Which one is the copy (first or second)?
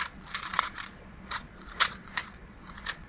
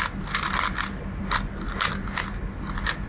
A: first